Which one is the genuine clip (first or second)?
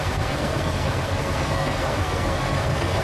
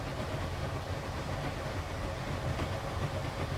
second